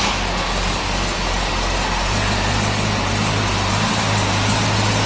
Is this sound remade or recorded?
recorded